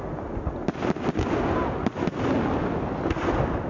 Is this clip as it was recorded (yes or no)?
yes